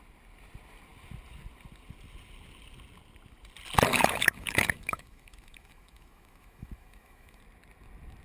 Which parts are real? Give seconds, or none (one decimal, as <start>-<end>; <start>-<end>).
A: 0.0-3.9; 7.4-8.2